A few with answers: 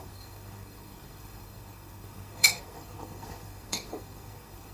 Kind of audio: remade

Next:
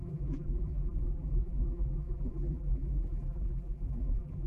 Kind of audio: remade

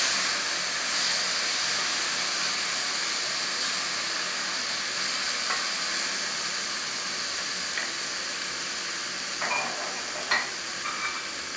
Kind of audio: recorded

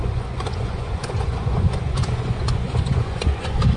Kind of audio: remade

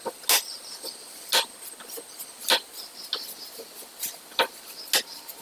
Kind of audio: recorded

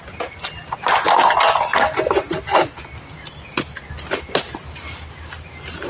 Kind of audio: recorded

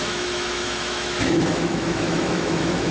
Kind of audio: remade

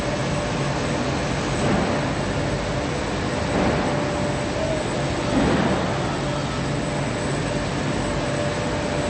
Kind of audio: recorded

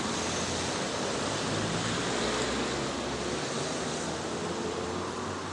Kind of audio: recorded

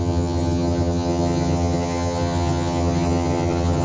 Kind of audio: remade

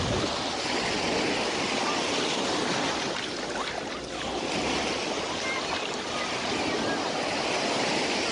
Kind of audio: recorded